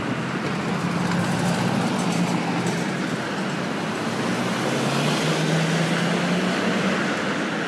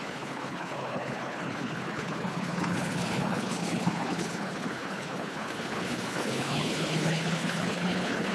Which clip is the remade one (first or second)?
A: second